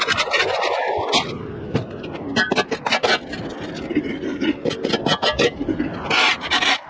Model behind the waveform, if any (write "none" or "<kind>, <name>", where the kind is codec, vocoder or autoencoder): none